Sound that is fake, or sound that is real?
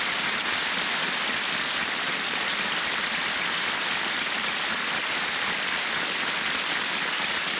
fake